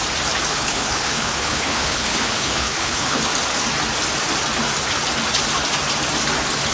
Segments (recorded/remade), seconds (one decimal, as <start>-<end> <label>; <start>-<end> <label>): 0.0-0.5 recorded; 0.5-3.2 remade; 3.2-6.7 recorded